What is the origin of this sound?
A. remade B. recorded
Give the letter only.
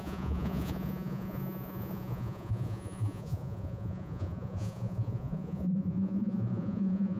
A